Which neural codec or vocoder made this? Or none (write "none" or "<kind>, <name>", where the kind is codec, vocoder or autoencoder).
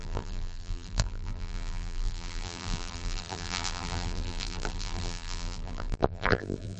vocoder, BigVGAN v2